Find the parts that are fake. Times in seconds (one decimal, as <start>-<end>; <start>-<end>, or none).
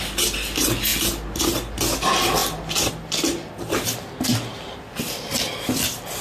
none